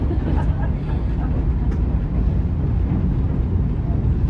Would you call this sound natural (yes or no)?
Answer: yes